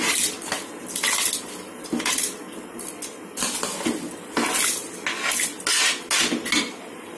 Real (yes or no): yes